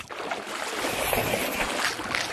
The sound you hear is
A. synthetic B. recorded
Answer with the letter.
B